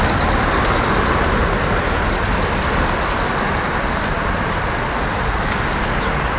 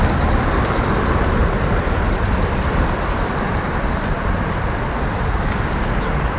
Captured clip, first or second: first